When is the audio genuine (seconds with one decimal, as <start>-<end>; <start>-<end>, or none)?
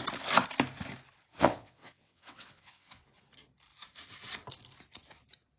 0.0-1.3; 3.0-5.6